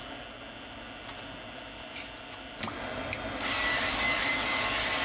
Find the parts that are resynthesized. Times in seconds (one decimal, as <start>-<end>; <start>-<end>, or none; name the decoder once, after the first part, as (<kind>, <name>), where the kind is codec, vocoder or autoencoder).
none